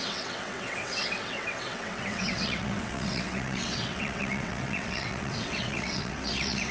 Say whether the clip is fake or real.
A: fake